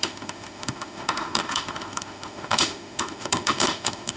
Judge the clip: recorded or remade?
remade